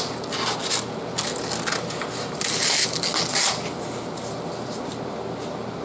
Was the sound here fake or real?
real